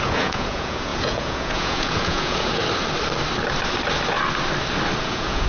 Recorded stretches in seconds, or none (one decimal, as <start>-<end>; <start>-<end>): 2.6-5.0